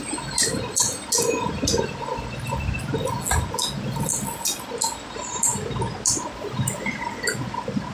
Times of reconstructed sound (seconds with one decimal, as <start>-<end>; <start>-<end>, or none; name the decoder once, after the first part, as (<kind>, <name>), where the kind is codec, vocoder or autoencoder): none

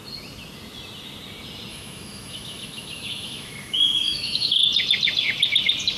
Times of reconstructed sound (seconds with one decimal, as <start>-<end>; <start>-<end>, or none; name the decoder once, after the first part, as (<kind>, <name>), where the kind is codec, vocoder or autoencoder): 1.7-4.6 (autoencoder, DAC-VAE)

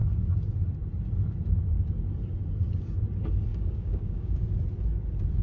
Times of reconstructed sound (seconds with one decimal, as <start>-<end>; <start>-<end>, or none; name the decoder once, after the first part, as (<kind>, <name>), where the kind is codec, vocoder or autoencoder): 3.5-4.4 (codec, DAC)

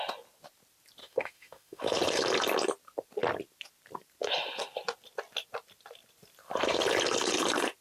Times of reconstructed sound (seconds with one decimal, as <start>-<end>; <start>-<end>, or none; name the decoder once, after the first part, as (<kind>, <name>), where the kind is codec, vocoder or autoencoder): 1.0-1.8 (autoencoder, DAC-VAE)

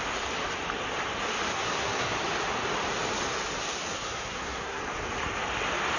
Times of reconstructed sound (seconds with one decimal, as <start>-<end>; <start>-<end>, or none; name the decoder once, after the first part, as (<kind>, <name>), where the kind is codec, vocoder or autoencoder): 1.5-2.1 (codec, SNAC); 3.9-4.8

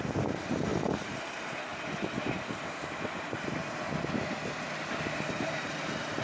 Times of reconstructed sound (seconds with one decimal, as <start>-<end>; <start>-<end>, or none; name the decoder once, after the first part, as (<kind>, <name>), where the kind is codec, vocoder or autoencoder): none

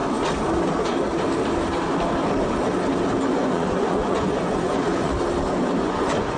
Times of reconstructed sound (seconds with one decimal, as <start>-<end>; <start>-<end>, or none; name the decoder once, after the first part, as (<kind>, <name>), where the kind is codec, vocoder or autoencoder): 3.3-5.1 (vocoder, Vocos); 5.8-6.4

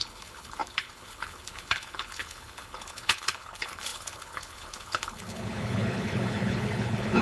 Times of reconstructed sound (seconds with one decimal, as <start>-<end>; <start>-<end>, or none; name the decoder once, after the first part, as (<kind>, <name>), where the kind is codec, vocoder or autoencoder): 0.0-7.2 (codec, HILCodec)